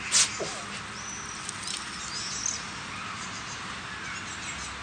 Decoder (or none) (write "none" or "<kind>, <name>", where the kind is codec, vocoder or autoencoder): none